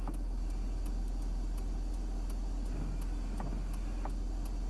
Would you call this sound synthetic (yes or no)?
no